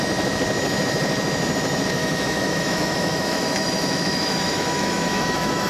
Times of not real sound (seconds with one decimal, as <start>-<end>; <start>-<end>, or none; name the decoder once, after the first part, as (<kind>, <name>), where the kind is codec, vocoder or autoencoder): 2.0-5.7 (autoencoder, DAC-VAE)